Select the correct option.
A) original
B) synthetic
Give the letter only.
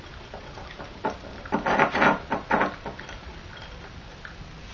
A